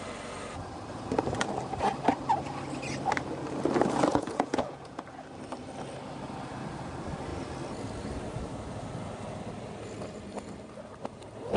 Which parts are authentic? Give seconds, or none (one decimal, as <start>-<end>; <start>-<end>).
0.0-4.1; 5.0-11.6